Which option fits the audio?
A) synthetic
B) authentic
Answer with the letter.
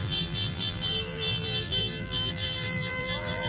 A